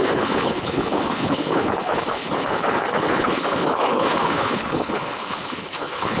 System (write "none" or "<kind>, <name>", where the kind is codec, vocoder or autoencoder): codec, HILCodec